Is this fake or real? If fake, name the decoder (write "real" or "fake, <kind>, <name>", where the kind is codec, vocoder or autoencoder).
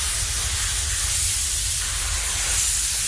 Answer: real